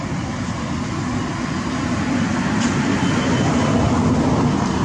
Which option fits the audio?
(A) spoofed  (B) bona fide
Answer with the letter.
B